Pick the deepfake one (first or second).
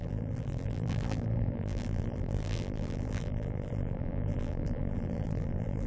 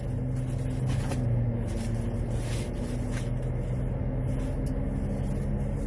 first